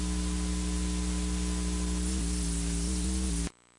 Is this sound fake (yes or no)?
no